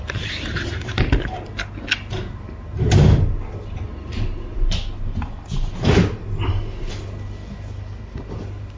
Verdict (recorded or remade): recorded